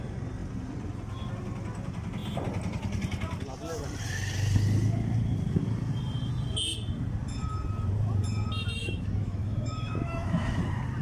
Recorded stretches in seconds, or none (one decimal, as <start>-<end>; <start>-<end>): 0.0-8.8; 10.6-11.0